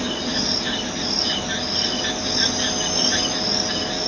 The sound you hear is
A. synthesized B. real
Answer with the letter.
B